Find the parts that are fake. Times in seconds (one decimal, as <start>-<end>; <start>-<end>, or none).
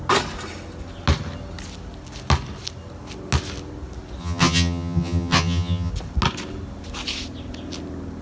4.2-5.9